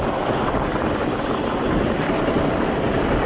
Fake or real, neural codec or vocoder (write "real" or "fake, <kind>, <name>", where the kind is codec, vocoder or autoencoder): real